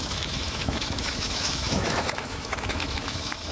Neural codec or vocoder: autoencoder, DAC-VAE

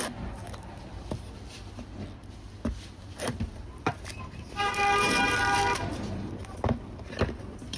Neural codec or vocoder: vocoder, BigVGAN v2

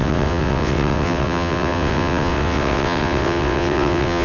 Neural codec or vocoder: vocoder, WaveNeXt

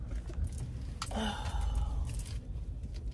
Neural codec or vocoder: none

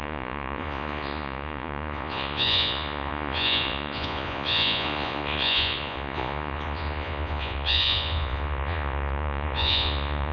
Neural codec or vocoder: vocoder, Vocos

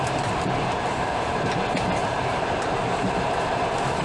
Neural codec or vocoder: none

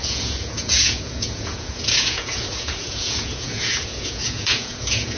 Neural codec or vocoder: vocoder, Vocos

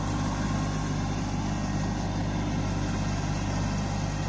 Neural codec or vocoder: none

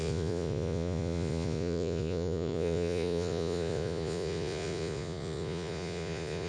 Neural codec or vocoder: vocoder, Vocos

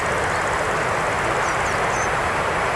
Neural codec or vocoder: none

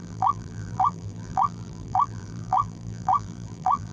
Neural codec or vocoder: vocoder, BigVGAN v2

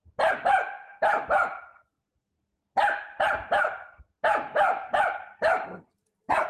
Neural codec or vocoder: none